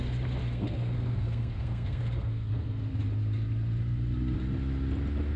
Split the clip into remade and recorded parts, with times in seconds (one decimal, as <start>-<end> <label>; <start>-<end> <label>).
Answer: 0.0-0.4 recorded; 0.4-3.0 remade; 3.0-5.4 recorded